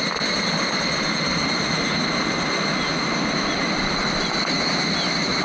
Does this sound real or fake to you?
real